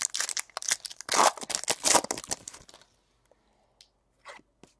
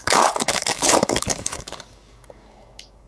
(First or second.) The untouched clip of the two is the first